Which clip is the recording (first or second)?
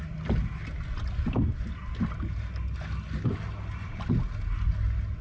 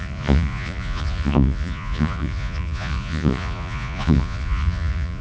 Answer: first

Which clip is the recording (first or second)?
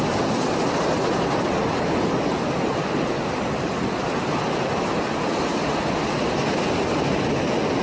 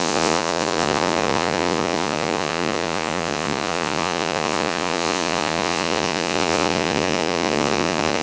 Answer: first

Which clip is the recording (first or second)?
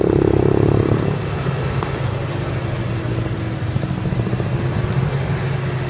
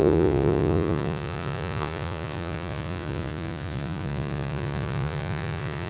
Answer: first